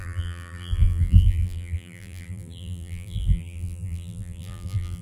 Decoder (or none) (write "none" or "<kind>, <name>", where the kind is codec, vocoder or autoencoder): vocoder, BigVGAN v2